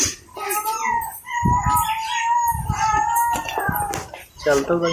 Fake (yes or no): no